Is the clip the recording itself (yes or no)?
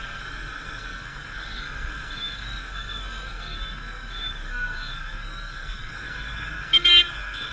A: no